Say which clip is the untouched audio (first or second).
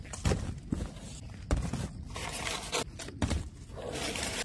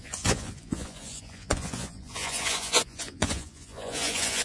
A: first